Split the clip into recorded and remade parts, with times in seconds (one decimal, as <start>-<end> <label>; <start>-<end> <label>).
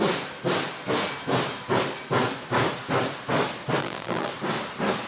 0.0-3.8 recorded; 3.8-4.3 remade; 4.3-5.1 recorded